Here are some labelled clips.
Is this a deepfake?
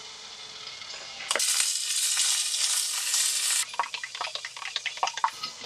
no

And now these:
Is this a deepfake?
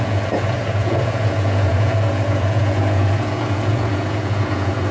yes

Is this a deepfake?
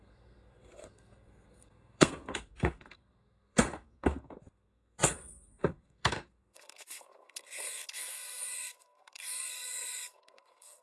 yes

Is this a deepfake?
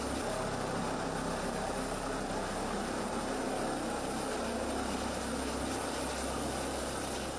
no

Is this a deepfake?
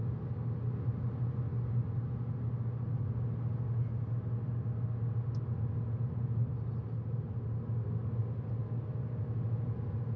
no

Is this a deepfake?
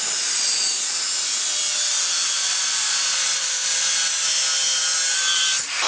no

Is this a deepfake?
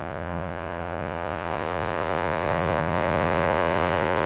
yes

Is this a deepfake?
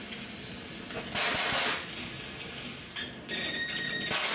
no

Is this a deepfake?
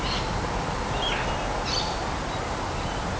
no